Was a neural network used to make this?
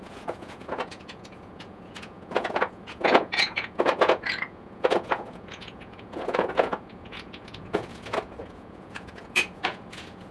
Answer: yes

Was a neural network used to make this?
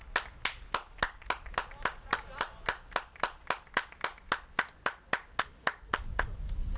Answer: no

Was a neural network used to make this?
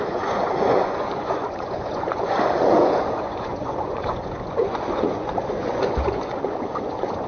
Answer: yes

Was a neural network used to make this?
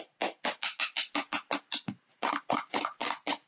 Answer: no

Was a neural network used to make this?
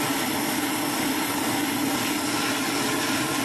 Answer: no